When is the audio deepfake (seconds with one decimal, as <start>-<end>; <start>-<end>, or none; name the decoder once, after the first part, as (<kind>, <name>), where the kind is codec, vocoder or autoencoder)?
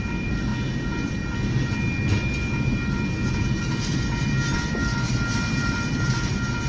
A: 0.0-0.5 (vocoder, BigVGAN v2); 3.6-4.9; 5.6-6.7